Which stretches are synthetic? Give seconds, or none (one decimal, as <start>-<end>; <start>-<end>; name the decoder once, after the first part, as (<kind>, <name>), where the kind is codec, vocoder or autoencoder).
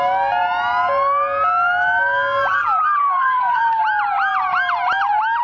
3.0-3.8 (codec, SNAC)